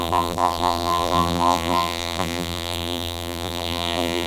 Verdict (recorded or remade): remade